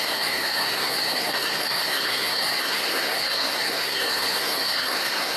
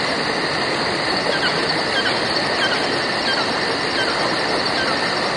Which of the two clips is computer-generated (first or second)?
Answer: first